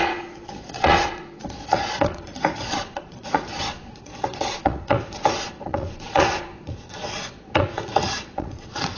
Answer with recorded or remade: remade